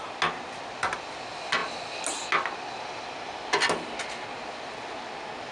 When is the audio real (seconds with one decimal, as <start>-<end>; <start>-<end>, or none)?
0.0-5.5